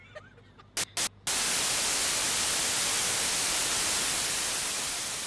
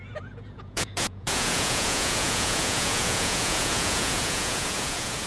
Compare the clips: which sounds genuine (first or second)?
first